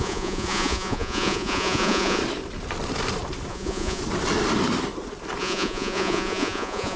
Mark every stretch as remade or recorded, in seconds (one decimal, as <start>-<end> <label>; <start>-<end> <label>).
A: 0.0-2.2 remade; 2.2-3.5 recorded; 3.5-4.0 remade; 4.0-5.4 recorded; 5.4-7.0 remade